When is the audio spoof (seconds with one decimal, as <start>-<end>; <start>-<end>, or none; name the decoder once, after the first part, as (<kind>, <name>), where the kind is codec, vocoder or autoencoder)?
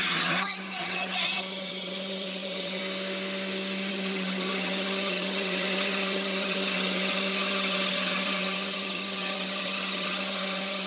0.0-2.8 (vocoder, HiFi-GAN); 3.9-10.9